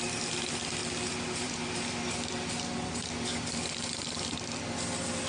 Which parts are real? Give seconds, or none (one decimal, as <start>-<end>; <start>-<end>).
0.0-0.8; 4.0-5.3